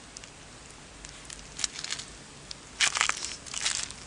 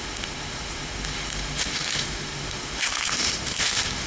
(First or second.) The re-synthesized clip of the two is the second